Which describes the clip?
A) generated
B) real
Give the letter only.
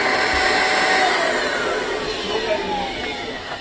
B